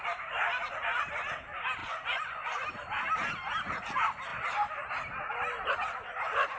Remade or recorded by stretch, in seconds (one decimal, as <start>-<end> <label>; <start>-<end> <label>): 0.0-1.8 recorded; 1.8-2.7 remade; 2.7-6.6 recorded